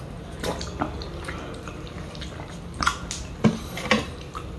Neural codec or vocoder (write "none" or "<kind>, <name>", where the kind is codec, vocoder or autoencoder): none